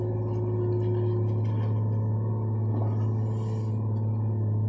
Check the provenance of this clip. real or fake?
real